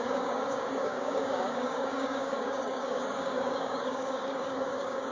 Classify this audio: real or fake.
fake